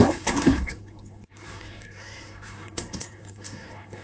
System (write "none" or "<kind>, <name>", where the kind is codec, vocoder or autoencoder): codec, SNAC